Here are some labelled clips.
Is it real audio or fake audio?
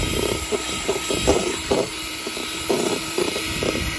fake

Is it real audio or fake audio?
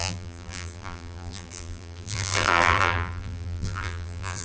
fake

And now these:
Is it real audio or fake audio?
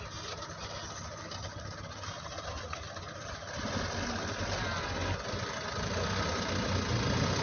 real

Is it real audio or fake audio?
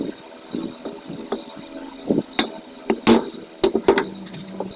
real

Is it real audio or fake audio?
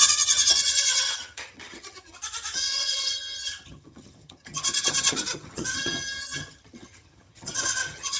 fake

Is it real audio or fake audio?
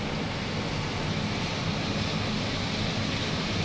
real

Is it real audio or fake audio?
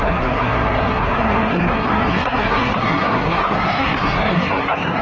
fake